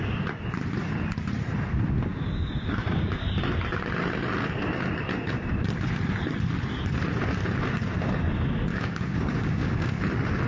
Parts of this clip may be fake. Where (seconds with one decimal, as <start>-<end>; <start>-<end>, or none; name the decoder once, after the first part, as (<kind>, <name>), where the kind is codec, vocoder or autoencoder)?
2.1-3.3 (codec, DAC); 8.7-9.9